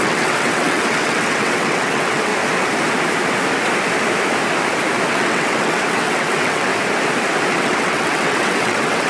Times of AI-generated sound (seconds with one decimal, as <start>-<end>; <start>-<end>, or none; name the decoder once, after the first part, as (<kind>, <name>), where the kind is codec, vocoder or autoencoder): 0.0-2.3 (vocoder, WaveNeXt); 5.1-6.7; 7.5-9.1